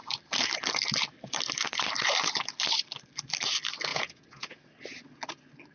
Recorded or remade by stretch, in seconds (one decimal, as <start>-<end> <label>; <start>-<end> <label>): 0.0-3.9 recorded; 3.9-4.6 remade; 4.6-5.7 recorded